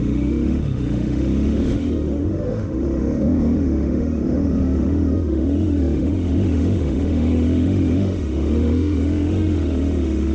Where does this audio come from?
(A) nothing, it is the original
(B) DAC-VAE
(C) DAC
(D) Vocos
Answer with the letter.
B